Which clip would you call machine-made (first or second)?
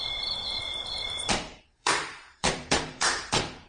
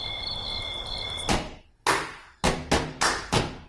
first